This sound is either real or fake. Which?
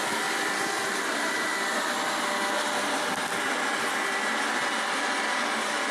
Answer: real